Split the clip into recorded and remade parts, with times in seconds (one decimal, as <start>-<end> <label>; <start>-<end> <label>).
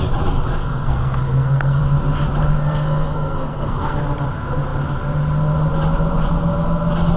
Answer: 0.0-0.6 recorded; 0.6-1.8 remade; 1.8-2.6 recorded; 2.6-4.0 remade; 4.0-7.2 recorded